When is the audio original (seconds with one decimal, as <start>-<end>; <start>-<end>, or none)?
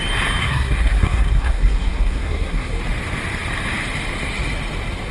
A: 0.0-0.4; 2.8-5.1